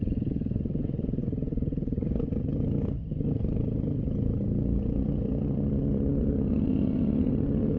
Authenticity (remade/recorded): remade